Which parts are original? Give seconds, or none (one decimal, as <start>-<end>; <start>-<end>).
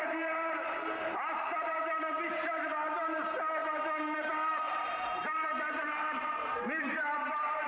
3.6-4.7